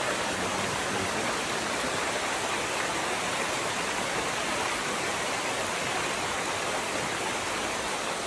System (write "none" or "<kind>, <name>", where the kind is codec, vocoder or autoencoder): none